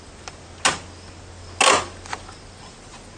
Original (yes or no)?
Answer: yes